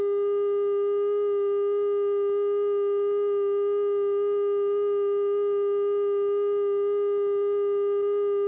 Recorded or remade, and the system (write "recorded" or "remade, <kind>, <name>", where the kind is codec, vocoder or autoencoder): recorded